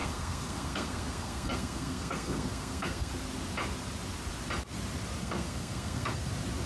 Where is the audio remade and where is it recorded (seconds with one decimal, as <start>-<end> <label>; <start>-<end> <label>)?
0.0-3.1 remade; 3.1-5.2 recorded; 5.2-6.3 remade; 6.3-6.7 recorded